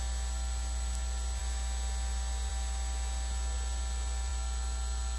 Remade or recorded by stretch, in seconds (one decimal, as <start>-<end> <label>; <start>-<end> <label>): 0.0-5.2 recorded